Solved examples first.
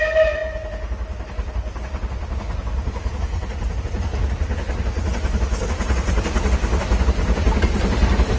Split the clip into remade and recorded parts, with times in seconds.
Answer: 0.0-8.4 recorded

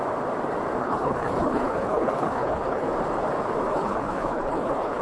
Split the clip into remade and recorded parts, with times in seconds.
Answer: 0.0-0.8 recorded; 0.8-2.9 remade; 2.9-3.7 recorded; 3.7-5.0 remade

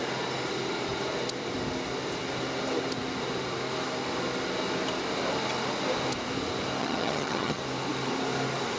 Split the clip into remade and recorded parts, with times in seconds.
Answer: 0.0-6.8 recorded; 6.8-7.6 remade; 7.6-8.8 recorded

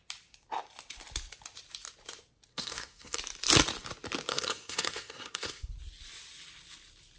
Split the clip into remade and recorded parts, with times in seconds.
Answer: 0.0-2.5 recorded; 2.5-3.2 remade; 3.2-4.3 recorded; 4.3-5.7 remade; 5.7-7.2 recorded